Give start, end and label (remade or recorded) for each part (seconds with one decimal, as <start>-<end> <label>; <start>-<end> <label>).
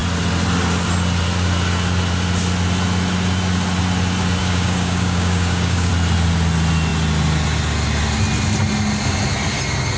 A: 0.0-4.4 recorded; 4.4-5.9 remade; 5.9-10.0 recorded